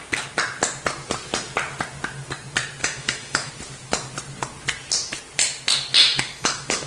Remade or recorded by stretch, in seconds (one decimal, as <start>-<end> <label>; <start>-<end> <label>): 0.0-2.8 recorded; 2.8-3.5 remade; 3.5-6.0 recorded; 6.0-6.9 remade